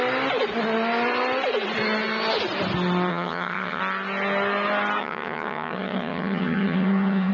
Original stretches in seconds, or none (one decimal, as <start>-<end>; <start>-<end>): 0.0-3.1; 3.8-5.0